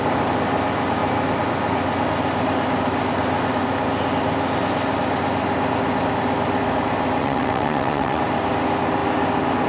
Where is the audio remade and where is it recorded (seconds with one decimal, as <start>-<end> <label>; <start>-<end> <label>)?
0.0-7.2 recorded; 7.2-8.2 remade; 8.2-9.7 recorded